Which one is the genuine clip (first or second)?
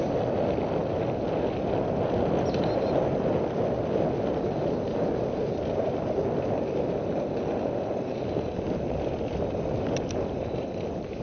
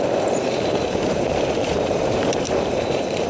first